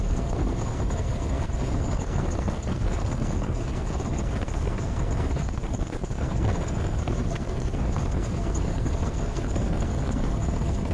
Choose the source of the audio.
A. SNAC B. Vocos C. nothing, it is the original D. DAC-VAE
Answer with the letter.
A